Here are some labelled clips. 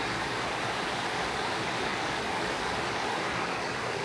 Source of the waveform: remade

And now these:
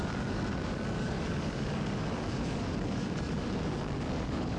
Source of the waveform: remade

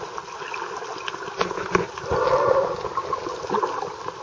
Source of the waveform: recorded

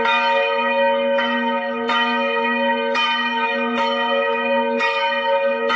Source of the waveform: remade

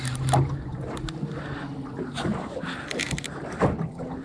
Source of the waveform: recorded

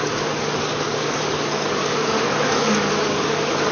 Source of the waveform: remade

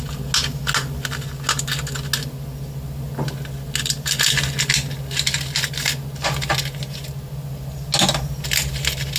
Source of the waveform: recorded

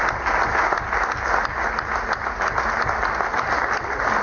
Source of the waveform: recorded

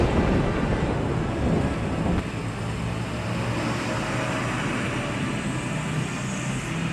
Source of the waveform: recorded